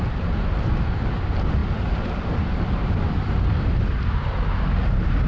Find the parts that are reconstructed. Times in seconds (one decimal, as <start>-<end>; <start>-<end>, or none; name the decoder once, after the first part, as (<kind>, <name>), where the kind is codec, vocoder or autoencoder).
none